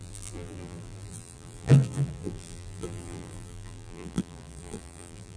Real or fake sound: fake